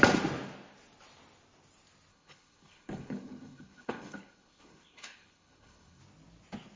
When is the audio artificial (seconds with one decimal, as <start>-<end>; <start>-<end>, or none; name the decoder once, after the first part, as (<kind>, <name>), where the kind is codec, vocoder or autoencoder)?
2.1-6.0 (codec, HILCodec)